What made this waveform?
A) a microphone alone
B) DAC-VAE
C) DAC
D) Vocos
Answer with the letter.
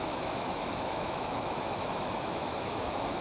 B